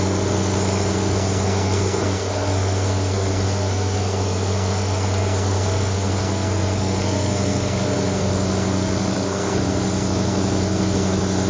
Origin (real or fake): fake